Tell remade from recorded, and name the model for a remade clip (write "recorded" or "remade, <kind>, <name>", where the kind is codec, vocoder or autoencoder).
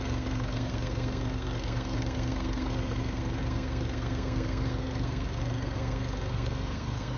remade, codec, SNAC